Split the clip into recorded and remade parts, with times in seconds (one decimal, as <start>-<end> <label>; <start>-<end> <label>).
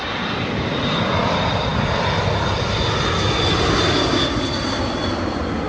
0.0-5.7 recorded